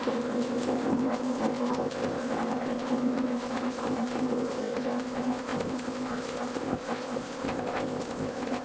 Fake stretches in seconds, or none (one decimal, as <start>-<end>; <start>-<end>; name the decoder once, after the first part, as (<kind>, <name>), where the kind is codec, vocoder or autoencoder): 0.0-8.6 (codec, ZipCodec)